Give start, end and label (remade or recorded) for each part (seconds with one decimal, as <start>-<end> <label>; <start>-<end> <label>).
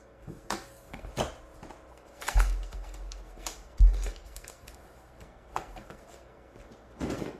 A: 0.0-1.1 remade; 1.1-1.9 recorded; 1.9-7.4 remade